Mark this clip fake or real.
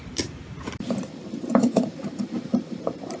fake